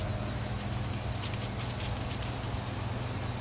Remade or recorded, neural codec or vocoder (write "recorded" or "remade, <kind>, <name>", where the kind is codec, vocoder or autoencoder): recorded